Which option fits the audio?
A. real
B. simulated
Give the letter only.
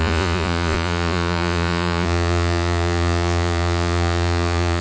B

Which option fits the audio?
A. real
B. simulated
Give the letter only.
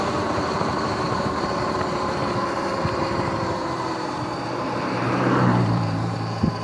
B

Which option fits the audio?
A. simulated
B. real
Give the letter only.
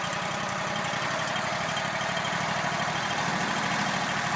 A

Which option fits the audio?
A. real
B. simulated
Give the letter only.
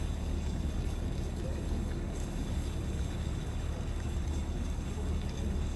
B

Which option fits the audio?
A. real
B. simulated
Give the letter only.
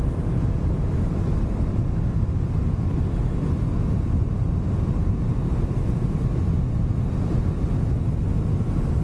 A